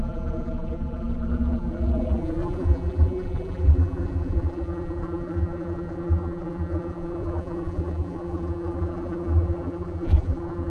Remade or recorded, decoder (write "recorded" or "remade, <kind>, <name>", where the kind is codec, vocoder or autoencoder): remade, vocoder, BigVGAN v2